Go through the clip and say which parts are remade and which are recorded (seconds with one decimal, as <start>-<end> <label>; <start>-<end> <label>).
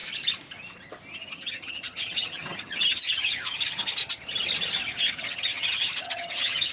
0.0-1.3 recorded; 1.3-4.0 remade; 4.0-5.0 recorded; 5.0-6.7 remade